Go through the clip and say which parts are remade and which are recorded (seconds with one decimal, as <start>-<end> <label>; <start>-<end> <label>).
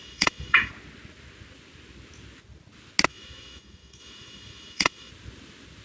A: 0.0-0.7 remade; 0.7-3.1 recorded; 3.1-5.1 remade; 5.1-5.8 recorded